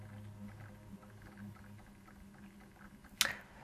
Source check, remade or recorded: recorded